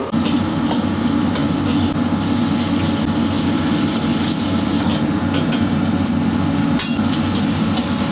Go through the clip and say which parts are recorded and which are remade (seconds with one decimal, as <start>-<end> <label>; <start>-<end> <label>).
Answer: 0.0-8.1 recorded